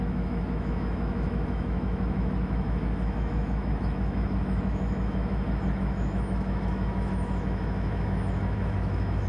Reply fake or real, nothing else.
fake